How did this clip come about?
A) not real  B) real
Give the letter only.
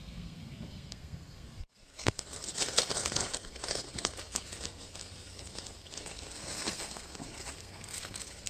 A